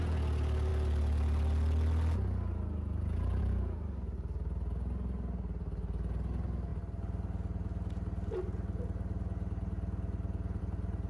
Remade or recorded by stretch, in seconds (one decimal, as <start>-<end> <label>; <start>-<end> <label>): 0.0-11.1 recorded